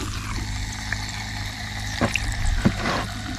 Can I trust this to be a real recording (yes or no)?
yes